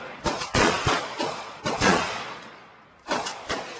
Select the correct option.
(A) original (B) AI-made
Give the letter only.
B